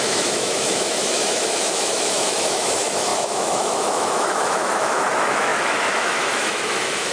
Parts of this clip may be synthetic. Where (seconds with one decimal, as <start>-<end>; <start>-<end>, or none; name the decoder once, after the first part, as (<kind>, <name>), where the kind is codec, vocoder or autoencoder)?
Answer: 0.0-7.1 (autoencoder, DAC-VAE)

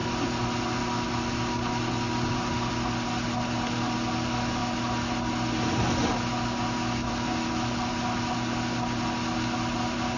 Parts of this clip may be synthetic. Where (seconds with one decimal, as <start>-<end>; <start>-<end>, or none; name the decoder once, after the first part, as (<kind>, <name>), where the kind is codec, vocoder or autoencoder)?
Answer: none

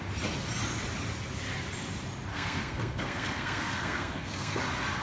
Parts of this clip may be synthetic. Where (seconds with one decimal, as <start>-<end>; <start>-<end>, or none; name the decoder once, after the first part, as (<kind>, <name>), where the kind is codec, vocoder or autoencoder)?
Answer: 2.3-4.6 (codec, SNAC)

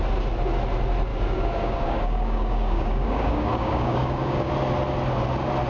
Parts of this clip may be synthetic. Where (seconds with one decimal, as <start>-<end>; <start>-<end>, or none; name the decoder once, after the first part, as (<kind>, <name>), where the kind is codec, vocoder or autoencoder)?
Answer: 1.1-4.5 (codec, DAC)

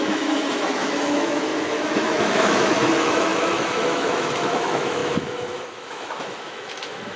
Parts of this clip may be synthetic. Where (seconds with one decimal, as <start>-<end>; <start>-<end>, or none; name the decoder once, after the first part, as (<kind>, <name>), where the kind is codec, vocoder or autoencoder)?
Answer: 0.0-7.2 (autoencoder, DAC-VAE)

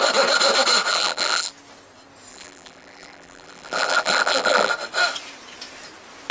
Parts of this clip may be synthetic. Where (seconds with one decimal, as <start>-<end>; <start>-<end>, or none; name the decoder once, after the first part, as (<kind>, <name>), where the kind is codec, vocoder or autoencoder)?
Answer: 0.9-1.5 (vocoder, BigVGAN v2); 2.3-4.7

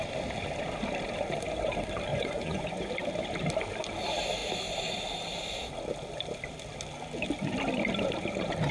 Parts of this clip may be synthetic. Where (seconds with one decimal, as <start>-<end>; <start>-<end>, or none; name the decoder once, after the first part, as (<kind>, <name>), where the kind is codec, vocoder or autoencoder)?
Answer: 2.1-2.9 (vocoder, Vocos)

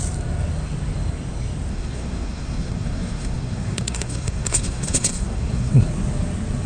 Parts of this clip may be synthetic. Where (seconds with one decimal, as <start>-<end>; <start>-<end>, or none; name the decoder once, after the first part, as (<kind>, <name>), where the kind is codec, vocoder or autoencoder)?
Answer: 1.7-5.7 (codec, SNAC)